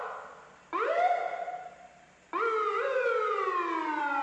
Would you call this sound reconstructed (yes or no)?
no